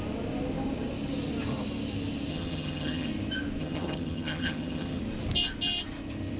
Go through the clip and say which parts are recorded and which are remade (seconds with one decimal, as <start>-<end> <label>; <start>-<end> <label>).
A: 0.0-2.3 recorded; 2.3-3.1 remade; 3.1-3.6 recorded; 3.6-5.0 remade; 5.0-6.4 recorded